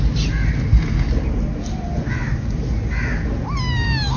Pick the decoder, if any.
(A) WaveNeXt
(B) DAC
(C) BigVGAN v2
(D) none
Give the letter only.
D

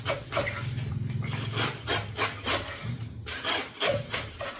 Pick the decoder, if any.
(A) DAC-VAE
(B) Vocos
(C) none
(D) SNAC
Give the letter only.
C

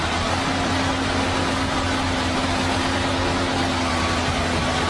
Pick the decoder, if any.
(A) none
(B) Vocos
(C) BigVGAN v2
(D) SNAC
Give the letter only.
A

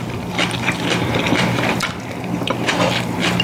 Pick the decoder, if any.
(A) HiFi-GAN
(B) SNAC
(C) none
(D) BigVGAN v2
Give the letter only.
D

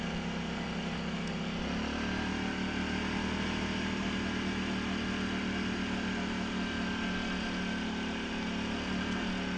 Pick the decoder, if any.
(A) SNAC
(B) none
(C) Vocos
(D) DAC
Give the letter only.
B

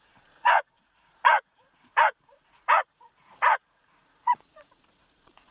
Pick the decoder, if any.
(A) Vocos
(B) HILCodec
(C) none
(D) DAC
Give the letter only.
A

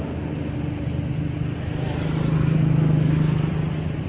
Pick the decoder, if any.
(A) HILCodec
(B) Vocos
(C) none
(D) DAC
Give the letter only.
C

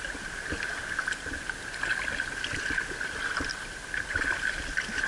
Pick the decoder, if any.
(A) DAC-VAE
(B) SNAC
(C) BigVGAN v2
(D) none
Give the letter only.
D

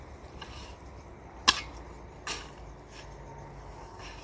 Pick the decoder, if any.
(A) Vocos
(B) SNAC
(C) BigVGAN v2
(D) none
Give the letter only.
D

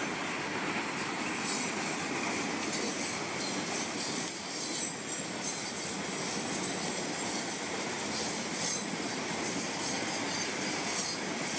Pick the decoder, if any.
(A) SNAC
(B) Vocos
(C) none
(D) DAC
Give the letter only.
C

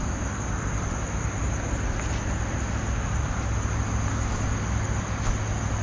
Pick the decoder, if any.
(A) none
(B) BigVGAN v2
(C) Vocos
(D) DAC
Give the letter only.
A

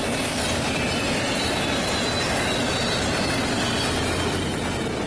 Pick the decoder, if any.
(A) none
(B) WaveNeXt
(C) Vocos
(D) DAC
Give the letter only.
A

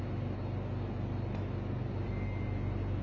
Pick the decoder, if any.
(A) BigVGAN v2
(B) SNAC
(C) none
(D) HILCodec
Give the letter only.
C